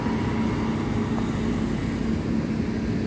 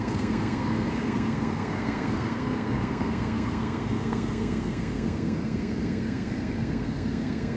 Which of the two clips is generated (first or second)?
second